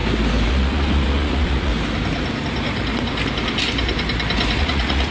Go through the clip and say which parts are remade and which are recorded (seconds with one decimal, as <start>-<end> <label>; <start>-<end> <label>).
0.0-0.5 recorded; 0.5-1.7 remade; 1.7-4.6 recorded; 4.6-5.1 remade